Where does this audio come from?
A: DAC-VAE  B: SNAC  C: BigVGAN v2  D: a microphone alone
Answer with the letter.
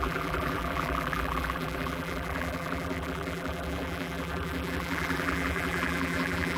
C